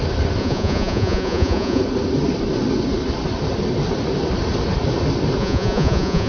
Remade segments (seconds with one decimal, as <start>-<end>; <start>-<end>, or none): 0.4-1.8; 5.4-6.3